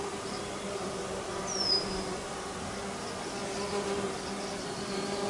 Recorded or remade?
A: recorded